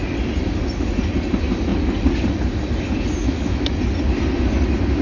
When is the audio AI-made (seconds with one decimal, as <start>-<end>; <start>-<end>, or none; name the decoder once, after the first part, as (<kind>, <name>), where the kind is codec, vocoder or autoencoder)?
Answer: 3.2-3.7 (autoencoder, DAC-VAE)